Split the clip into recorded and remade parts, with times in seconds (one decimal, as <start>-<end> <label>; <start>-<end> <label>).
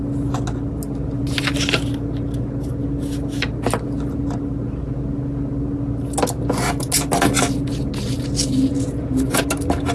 0.0-8.7 recorded; 8.7-9.4 remade; 9.4-9.9 recorded